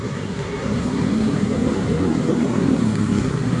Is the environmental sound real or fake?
fake